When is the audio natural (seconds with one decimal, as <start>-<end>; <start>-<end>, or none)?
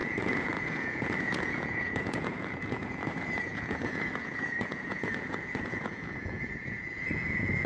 none